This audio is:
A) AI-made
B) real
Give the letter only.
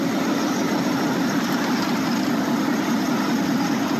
B